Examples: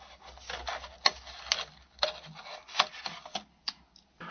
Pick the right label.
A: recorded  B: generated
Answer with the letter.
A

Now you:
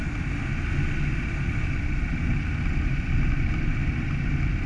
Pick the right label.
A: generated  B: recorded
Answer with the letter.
B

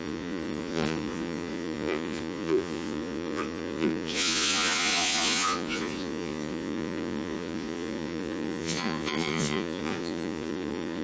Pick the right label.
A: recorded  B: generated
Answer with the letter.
B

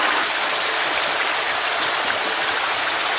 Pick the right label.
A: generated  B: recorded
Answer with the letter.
B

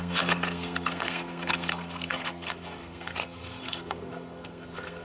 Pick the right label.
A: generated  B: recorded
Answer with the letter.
A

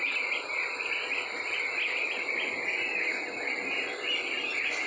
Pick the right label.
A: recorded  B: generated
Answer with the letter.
A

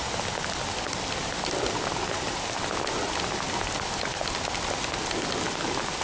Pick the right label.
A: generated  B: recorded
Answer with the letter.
B